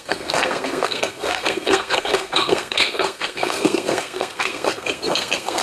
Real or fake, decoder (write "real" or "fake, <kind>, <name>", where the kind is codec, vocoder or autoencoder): fake, codec, SNAC